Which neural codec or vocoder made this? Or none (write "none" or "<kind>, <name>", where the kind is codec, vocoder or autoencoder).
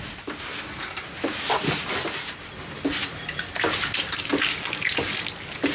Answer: none